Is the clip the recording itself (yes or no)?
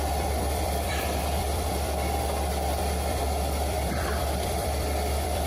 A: no